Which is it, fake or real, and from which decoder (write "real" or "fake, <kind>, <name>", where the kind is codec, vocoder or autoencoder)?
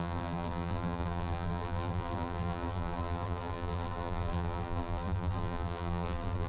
fake, vocoder, BigVGAN v2